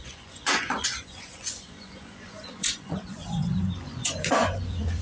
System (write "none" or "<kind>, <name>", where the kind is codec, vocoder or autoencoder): vocoder, Vocos